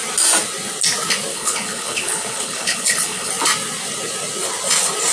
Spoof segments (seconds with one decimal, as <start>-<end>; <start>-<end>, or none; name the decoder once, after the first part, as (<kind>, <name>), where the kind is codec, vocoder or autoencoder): 1.3-3.3 (codec, HILCodec)